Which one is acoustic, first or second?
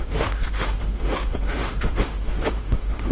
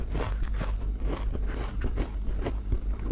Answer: second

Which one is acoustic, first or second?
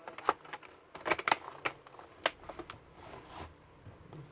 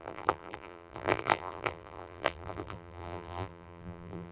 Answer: first